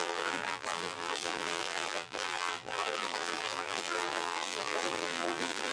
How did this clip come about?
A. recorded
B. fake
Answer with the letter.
B